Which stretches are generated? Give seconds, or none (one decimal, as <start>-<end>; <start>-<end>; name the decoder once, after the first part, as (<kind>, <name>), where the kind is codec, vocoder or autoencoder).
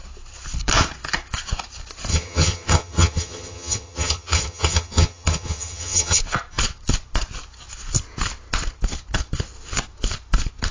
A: 2.1-6.2 (vocoder, HiFi-GAN)